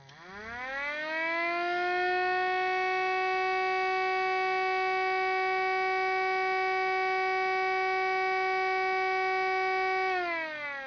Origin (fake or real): real